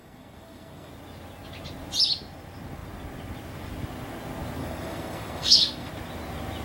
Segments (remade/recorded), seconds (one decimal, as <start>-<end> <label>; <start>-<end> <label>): 0.0-0.9 remade; 0.9-4.6 recorded; 4.6-5.9 remade; 5.9-6.6 recorded